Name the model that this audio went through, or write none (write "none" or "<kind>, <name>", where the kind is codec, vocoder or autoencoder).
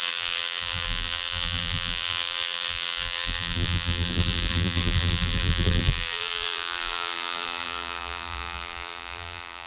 vocoder, BigVGAN v2